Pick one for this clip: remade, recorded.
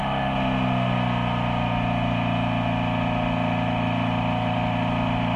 recorded